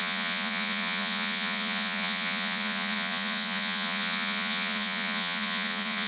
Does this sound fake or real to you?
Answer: fake